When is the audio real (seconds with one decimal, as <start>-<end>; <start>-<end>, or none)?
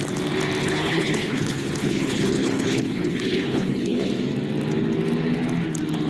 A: 0.0-0.6; 4.1-6.1